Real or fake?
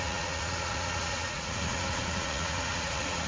fake